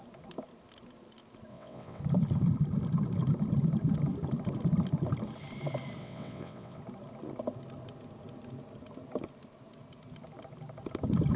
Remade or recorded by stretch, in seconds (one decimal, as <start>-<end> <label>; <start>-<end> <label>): 0.0-1.5 recorded; 1.5-2.0 remade; 2.0-6.0 recorded; 6.0-6.8 remade; 6.8-11.4 recorded